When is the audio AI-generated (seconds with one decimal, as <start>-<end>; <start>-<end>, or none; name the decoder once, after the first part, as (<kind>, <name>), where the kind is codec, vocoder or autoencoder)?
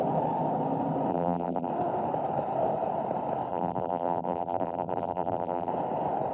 1.1-1.7 (vocoder, BigVGAN v2); 3.5-5.7